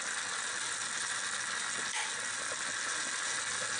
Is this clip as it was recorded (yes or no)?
yes